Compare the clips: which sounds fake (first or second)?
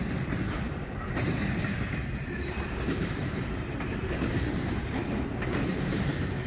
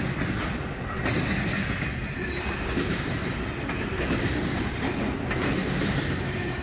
first